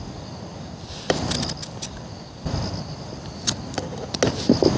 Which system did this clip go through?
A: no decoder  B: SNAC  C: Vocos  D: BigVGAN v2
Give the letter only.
A